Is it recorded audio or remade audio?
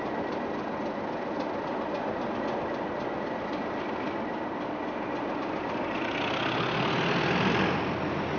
recorded